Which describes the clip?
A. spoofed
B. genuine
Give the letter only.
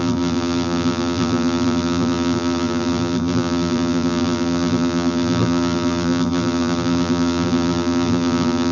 A